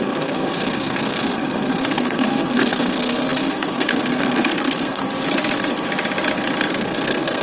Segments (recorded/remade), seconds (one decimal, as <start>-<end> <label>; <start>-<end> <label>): 0.0-5.0 remade; 5.0-6.7 recorded; 6.7-7.4 remade